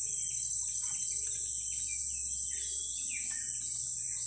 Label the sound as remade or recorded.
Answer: recorded